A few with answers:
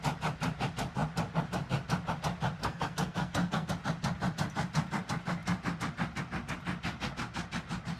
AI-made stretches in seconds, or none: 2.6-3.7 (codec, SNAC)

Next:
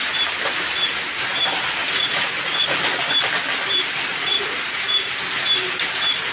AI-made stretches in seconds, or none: 1.8-2.8 (vocoder, Vocos); 4.1-5.1